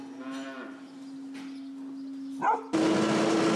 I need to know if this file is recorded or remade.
recorded